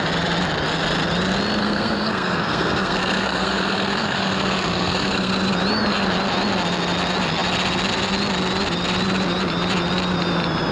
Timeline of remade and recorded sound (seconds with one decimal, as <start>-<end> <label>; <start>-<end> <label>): 0.0-1.6 recorded; 1.6-5.3 remade; 5.3-10.7 recorded